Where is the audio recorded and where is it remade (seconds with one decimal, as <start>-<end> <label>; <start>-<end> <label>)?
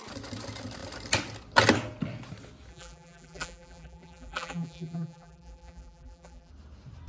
0.0-2.7 recorded; 2.7-6.5 remade; 6.5-7.1 recorded